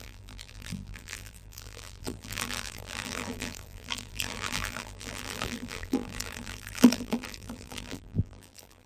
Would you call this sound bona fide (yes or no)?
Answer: no